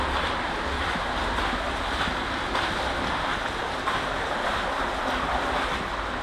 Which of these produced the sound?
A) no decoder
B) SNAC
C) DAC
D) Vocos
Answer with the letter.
A